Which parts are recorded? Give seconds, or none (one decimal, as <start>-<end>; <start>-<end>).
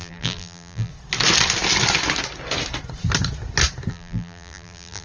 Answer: 0.9-3.9